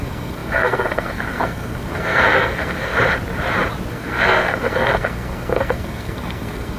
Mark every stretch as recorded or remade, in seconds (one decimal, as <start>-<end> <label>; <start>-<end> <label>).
0.0-2.9 remade; 2.9-3.9 recorded; 3.9-6.8 remade